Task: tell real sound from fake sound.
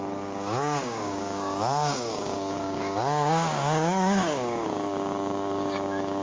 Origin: fake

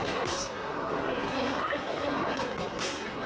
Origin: fake